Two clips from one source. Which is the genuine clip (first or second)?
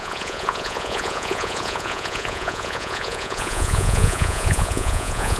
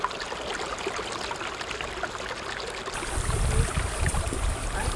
second